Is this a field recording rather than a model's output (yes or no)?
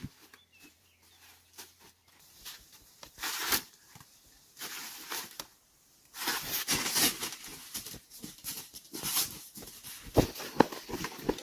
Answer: no